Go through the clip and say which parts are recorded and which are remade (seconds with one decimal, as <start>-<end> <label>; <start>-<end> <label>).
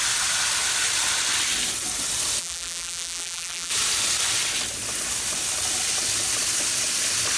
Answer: 0.0-2.4 recorded; 2.4-3.7 remade; 3.7-7.4 recorded